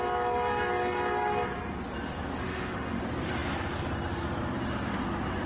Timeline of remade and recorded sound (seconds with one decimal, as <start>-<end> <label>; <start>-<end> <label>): 0.0-2.4 recorded; 2.4-3.0 remade; 3.0-5.5 recorded